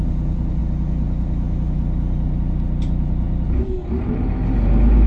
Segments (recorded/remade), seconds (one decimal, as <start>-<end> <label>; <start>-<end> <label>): 0.0-5.1 recorded